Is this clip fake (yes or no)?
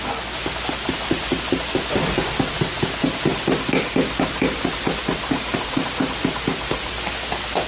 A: no